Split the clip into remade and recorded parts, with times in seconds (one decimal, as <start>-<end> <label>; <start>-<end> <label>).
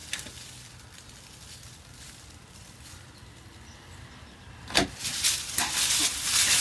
0.0-6.6 recorded